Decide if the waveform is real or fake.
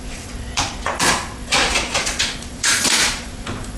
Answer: fake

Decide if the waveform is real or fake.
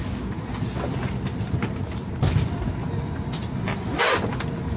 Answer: real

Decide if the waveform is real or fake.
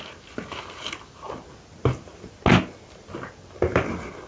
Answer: real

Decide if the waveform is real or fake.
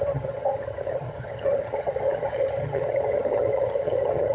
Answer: fake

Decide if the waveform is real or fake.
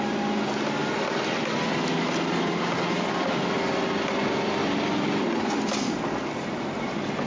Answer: real